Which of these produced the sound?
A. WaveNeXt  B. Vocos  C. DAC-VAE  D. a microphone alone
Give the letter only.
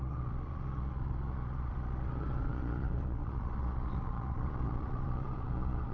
B